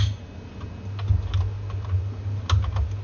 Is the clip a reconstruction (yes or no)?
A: no